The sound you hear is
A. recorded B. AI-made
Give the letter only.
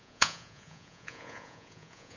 B